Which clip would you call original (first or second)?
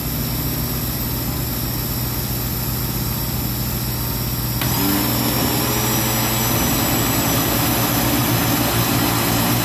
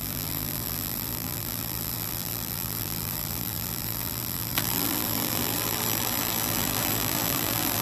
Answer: first